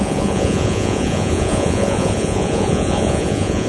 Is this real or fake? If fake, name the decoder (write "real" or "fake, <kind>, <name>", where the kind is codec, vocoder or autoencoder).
fake, vocoder, Vocos